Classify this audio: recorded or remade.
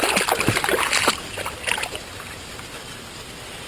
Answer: recorded